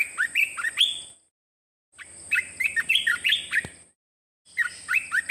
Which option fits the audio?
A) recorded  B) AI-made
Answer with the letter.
A